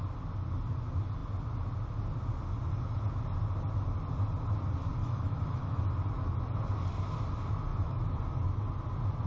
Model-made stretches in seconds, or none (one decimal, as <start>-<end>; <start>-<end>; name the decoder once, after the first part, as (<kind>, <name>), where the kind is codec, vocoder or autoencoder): 5.0-5.8 (autoencoder, DAC-VAE); 7.7-8.2